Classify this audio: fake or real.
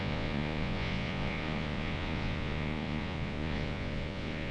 fake